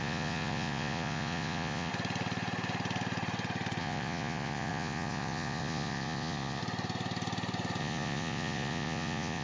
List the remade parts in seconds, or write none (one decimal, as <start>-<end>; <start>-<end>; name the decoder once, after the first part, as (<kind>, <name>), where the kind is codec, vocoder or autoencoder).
0.0-1.9 (vocoder, Vocos); 3.8-6.6; 7.8-9.4

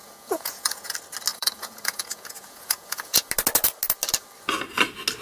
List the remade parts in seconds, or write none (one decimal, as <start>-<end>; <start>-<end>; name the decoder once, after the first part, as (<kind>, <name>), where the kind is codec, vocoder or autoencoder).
0.0-0.9 (vocoder, Vocos); 1.3-3.3

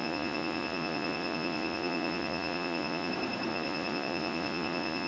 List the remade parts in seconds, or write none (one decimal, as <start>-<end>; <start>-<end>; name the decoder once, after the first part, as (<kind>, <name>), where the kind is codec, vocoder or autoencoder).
0.0-3.1 (vocoder, Vocos); 3.5-5.1

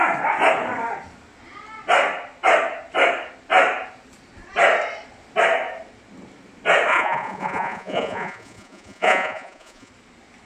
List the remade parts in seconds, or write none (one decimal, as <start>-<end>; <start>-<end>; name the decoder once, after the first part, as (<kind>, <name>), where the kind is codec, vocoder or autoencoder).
6.9-9.9 (vocoder, Vocos)

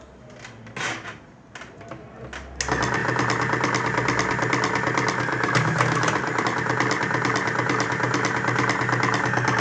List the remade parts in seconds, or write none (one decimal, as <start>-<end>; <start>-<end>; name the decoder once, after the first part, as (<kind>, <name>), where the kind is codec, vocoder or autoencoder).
none

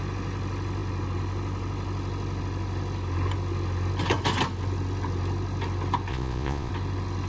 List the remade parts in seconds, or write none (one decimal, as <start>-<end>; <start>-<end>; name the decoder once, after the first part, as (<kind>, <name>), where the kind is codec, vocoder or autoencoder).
6.1-6.7 (vocoder, Vocos)

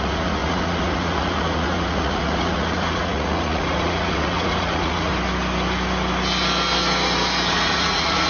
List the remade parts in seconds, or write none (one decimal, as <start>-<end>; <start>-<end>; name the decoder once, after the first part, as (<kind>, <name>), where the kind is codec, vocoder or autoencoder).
0.0-5.1 (vocoder, Vocos); 7.5-8.3

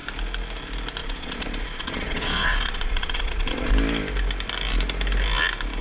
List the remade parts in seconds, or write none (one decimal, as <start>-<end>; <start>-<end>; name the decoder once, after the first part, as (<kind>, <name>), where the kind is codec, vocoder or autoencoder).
1.0-3.7 (vocoder, Vocos)